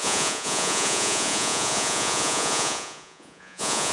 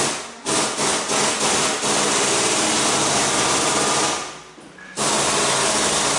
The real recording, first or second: second